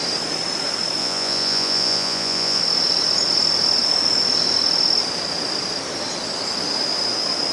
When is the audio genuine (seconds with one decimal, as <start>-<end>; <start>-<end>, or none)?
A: 0.0-1.0; 2.6-7.5